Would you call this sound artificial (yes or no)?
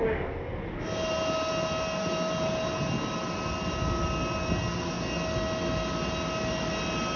no